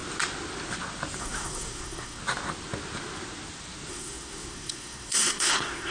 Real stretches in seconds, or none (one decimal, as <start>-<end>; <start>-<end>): 0.0-1.2; 2.2-3.9